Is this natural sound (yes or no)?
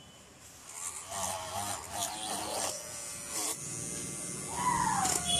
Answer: yes